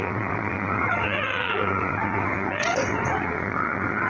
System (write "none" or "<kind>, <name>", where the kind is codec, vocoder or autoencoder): vocoder, WaveNeXt